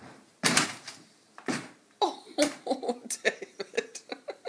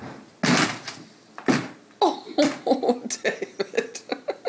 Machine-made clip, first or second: first